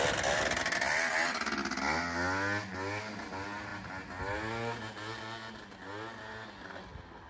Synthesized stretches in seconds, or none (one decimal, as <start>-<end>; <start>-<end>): none